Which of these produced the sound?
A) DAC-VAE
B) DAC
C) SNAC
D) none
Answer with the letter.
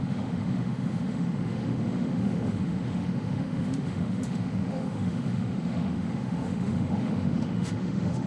A